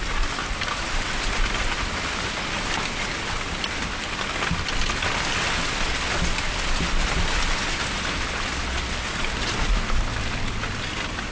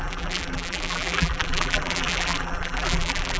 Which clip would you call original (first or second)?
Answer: first